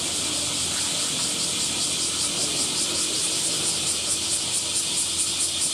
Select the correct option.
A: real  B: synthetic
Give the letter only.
A